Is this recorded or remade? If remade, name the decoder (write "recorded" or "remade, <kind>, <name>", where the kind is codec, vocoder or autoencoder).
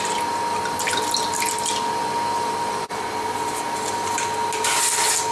recorded